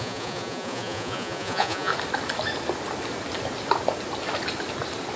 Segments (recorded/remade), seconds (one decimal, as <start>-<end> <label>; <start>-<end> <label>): 0.0-1.9 remade; 1.9-5.2 recorded